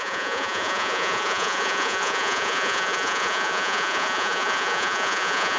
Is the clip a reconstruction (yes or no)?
yes